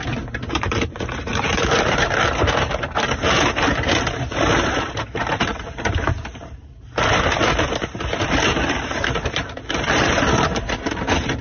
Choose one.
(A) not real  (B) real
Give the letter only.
A